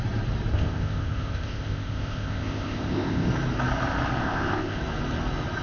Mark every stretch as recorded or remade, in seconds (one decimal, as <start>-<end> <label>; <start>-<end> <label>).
0.0-0.5 recorded; 0.5-3.3 remade; 3.3-4.2 recorded; 4.2-4.8 remade; 4.8-5.6 recorded